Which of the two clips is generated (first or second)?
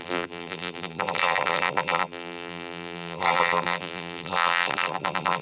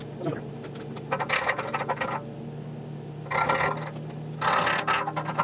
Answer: first